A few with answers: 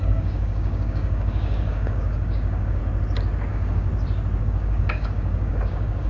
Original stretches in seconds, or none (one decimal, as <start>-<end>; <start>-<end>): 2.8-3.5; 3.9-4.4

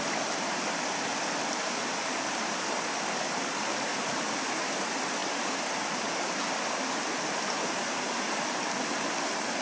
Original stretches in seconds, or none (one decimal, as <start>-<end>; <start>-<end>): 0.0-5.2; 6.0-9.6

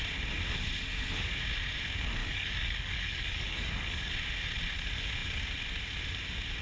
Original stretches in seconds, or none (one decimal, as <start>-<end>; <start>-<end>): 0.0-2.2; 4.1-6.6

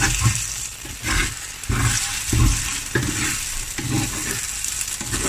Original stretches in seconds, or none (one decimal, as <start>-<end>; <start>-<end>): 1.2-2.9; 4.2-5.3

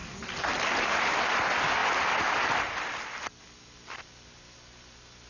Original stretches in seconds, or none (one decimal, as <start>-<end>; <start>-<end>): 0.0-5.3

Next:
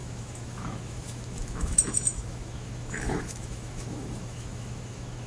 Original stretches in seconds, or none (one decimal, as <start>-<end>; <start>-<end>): none